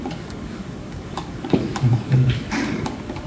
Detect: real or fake fake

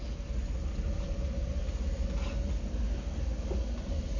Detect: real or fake real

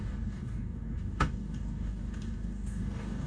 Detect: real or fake fake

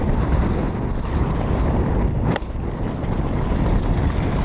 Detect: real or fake real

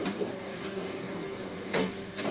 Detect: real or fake fake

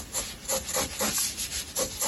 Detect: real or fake real